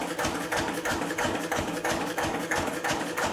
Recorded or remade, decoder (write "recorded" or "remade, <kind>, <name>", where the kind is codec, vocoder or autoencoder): remade, codec, DAC